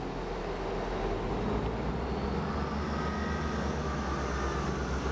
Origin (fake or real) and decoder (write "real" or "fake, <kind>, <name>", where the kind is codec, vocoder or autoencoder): real